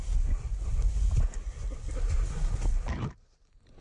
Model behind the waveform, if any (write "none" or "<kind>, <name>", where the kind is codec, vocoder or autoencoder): none